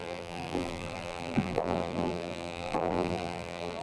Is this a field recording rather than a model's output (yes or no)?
no